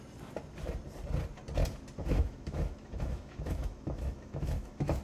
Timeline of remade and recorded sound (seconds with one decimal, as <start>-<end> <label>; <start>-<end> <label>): 0.0-2.0 recorded; 2.0-5.0 remade